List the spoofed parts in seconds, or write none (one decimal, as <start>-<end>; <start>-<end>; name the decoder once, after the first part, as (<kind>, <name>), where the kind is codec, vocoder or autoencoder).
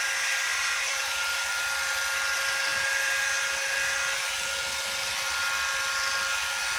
0.5-1.5 (vocoder, BigVGAN v2)